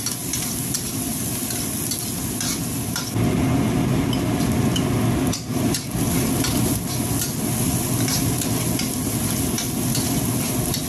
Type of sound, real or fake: real